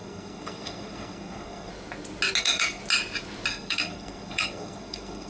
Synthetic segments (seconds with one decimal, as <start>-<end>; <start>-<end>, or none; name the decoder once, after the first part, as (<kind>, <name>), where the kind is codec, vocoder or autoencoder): 0.0-1.7 (codec, SNAC); 2.4-2.8; 3.5-5.3